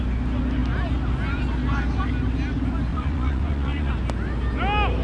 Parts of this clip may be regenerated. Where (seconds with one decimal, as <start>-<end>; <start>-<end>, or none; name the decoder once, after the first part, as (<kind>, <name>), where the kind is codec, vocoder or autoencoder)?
2.9-3.9 (vocoder, Vocos)